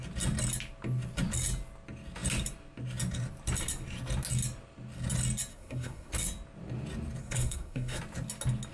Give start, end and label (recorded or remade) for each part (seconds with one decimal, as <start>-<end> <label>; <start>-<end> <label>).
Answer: 0.0-5.5 recorded; 5.5-6.1 remade; 6.1-7.2 recorded; 7.2-8.0 remade; 8.0-8.7 recorded